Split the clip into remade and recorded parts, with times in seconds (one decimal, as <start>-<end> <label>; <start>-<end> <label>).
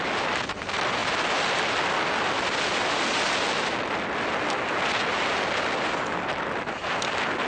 0.0-7.5 recorded